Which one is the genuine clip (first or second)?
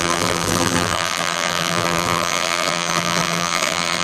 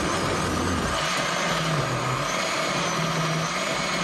second